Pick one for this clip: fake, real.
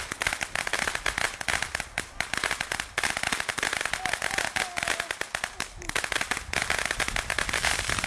real